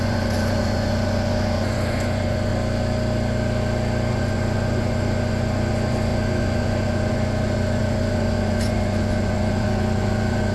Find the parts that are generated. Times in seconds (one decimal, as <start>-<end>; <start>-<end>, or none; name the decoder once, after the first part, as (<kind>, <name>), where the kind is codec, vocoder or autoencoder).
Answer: 0.0-2.5 (vocoder, Vocos); 4.1-10.5